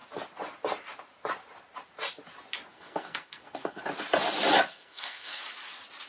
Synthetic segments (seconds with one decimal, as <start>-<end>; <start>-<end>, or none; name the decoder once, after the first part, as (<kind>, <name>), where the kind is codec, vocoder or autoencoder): 2.7-3.8 (codec, SNAC); 4.7-5.4